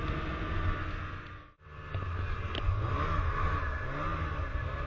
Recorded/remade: recorded